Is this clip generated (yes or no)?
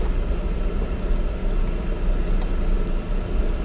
no